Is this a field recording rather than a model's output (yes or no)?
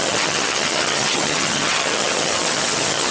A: no